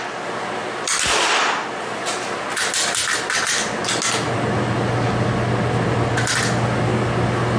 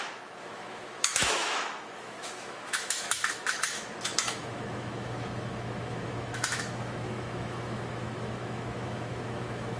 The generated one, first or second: second